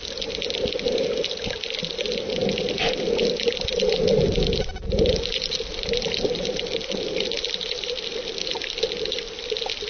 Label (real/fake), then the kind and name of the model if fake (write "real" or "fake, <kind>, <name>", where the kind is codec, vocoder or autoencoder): real